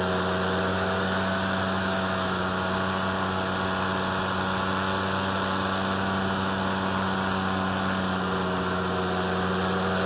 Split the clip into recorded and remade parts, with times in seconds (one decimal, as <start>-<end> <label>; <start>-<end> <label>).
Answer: 0.0-0.7 recorded; 0.7-2.4 remade; 2.4-10.1 recorded